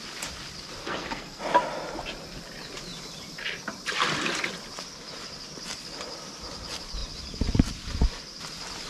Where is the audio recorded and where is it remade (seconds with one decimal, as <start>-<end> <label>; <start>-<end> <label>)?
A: 0.0-0.8 recorded; 0.8-1.4 remade; 1.4-8.9 recorded